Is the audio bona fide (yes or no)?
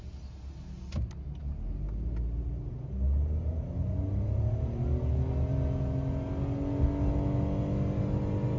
yes